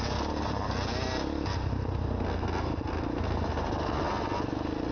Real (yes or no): yes